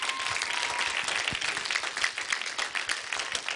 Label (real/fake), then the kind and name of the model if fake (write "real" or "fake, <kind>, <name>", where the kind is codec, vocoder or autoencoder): real